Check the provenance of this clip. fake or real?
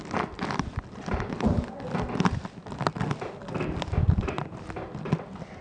real